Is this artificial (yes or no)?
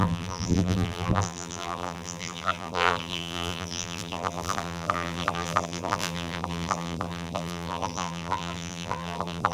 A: yes